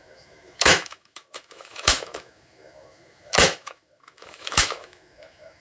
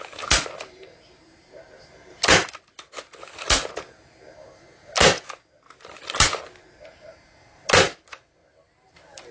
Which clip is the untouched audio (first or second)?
second